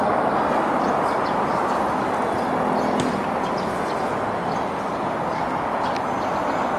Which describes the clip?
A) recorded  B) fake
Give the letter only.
A